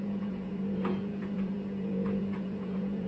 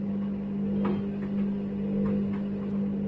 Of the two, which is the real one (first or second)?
second